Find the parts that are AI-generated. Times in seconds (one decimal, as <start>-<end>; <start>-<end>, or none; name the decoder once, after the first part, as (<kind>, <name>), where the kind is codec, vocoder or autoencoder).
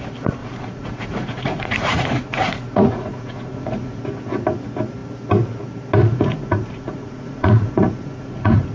0.4-4.0 (vocoder, Vocos); 6.0-8.7